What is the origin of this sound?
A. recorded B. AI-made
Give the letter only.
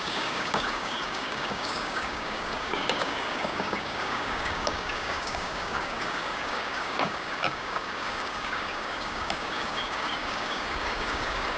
B